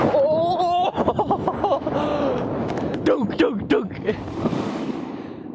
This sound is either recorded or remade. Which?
remade